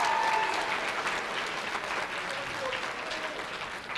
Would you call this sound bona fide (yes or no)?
yes